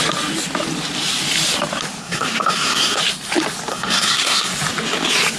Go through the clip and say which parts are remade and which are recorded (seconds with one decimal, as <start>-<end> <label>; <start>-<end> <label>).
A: 0.0-2.0 recorded; 2.0-3.0 remade; 3.0-3.7 recorded; 3.7-4.5 remade; 4.5-5.4 recorded